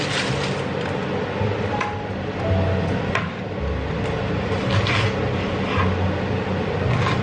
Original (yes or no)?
yes